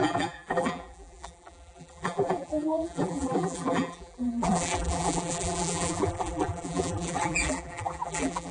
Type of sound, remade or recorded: remade